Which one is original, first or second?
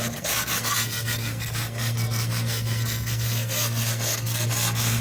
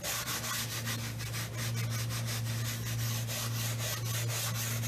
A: second